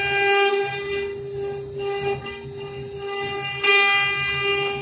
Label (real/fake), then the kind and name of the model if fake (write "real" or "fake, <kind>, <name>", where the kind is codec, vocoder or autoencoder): real